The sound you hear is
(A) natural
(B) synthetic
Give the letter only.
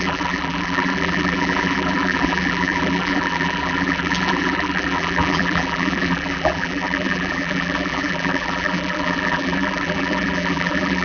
B